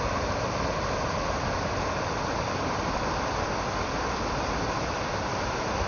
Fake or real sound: real